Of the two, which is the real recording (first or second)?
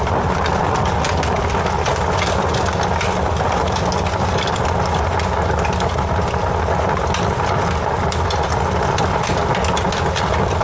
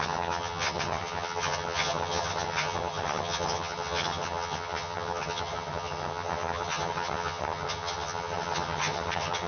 first